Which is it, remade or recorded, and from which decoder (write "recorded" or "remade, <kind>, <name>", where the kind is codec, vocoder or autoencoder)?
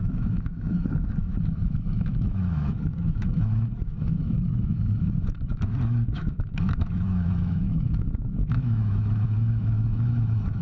remade, autoencoder, DAC-VAE